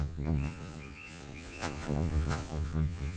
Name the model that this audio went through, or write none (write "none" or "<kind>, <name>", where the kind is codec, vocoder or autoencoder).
vocoder, Vocos